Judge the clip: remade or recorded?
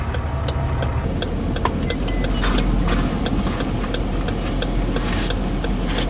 recorded